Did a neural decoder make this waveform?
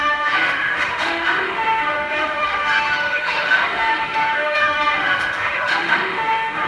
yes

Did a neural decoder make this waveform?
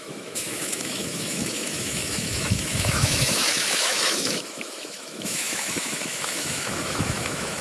yes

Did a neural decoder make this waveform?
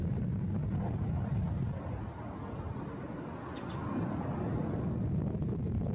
no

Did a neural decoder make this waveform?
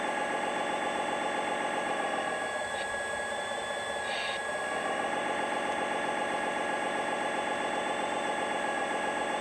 no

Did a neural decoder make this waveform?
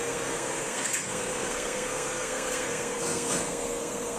yes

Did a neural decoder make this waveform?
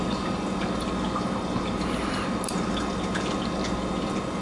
no